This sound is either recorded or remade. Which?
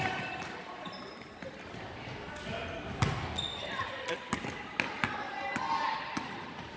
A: recorded